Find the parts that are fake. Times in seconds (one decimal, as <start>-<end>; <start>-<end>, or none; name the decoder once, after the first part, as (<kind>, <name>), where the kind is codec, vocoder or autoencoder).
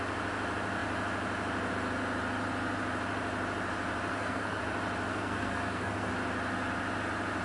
4.1-4.6 (codec, SNAC); 5.1-6.1